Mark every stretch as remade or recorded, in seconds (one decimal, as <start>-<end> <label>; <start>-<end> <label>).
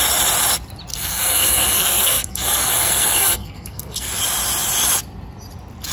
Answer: 0.0-0.9 recorded; 0.9-4.1 remade; 4.1-5.9 recorded